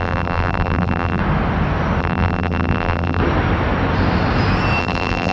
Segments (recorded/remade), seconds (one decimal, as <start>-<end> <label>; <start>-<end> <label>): 0.0-1.2 remade; 1.2-2.0 recorded; 2.0-3.2 remade; 3.2-4.8 recorded; 4.8-5.3 remade

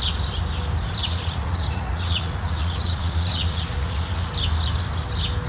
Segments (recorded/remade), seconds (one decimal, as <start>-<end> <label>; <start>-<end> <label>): 0.0-1.0 recorded; 1.0-4.3 remade; 4.3-5.5 recorded

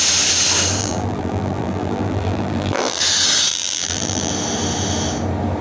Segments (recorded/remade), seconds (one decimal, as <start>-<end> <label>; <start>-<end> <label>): 0.0-0.8 recorded; 0.8-3.0 remade; 3.0-3.5 recorded; 3.5-4.3 remade; 4.3-5.6 recorded

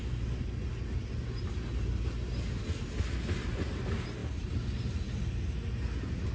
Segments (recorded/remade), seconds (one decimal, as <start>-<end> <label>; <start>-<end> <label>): 0.0-6.3 recorded

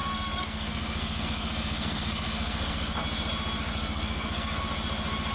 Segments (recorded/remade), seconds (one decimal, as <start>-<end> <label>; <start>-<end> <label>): 0.0-3.0 remade; 3.0-3.7 recorded; 3.7-4.6 remade; 4.6-5.3 recorded

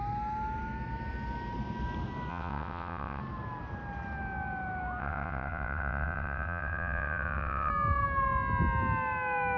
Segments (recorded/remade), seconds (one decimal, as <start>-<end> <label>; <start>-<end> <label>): 0.0-2.3 recorded; 2.3-3.2 remade; 3.2-5.0 recorded; 5.0-7.7 remade; 7.7-9.6 recorded

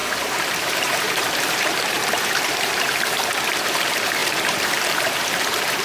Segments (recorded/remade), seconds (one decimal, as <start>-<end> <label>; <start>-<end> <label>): 0.0-5.8 remade

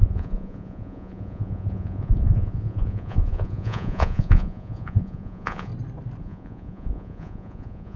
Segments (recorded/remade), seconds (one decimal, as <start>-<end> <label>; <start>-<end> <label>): 0.0-5.7 remade; 5.7-6.2 recorded; 6.2-8.0 remade